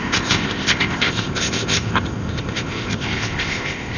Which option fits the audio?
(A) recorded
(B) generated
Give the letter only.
B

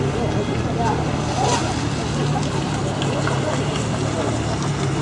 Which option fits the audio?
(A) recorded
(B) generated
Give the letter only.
A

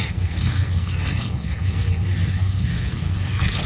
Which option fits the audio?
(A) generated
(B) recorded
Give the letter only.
A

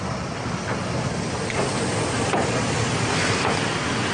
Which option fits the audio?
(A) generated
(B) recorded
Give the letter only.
B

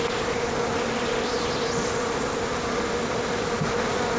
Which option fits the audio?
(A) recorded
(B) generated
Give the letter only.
A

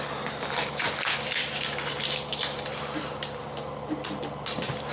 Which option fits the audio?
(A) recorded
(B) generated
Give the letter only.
A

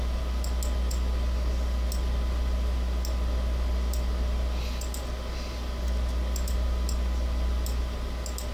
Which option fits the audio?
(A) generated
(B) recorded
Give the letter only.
B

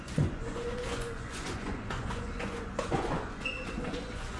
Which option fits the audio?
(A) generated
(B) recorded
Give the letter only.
A